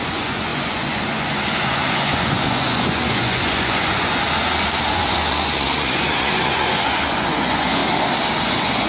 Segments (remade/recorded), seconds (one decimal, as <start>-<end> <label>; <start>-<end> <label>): 0.0-4.2 remade; 4.2-4.9 recorded; 4.9-7.8 remade; 7.8-8.3 recorded; 8.3-8.9 remade